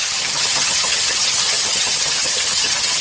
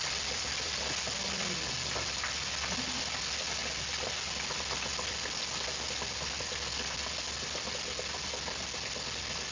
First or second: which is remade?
first